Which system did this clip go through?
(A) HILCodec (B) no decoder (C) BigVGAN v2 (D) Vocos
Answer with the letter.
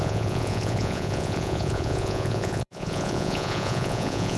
D